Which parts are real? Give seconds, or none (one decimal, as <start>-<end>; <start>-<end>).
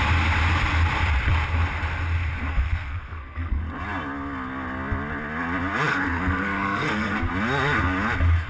0.0-2.5; 3.6-5.9; 7.3-8.5